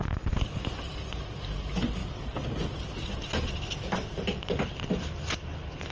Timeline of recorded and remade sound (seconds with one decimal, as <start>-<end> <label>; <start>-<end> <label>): 0.0-5.9 recorded

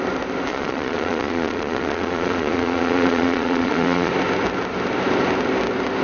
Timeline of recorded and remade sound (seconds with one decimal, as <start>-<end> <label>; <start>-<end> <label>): 0.0-0.5 recorded; 0.5-4.1 remade; 4.1-6.0 recorded